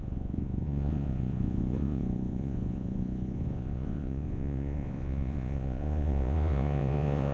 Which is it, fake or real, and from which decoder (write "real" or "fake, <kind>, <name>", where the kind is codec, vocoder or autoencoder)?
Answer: fake, vocoder, Vocos